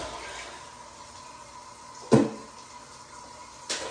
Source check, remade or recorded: recorded